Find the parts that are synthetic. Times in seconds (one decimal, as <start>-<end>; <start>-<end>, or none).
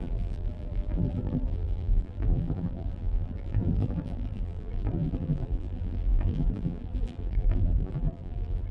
0.0-8.7